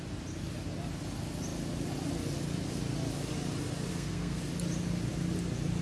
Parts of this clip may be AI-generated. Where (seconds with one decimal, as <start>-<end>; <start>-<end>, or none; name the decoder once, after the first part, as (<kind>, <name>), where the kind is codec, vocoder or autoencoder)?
3.9-4.4 (codec, SNAC)